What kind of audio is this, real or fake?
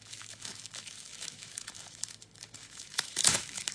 fake